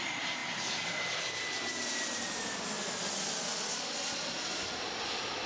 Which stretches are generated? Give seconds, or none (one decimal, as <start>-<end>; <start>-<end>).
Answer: none